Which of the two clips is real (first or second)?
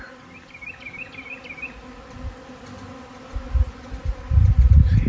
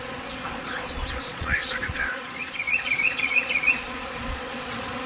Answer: first